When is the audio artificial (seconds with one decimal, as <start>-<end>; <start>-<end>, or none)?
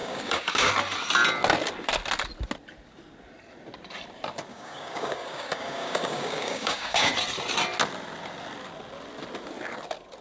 0.0-0.7; 4.5-7.1